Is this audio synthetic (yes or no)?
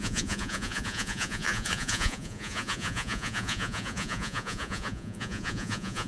yes